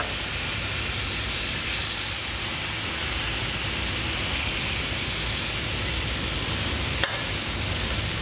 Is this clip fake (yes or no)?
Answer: no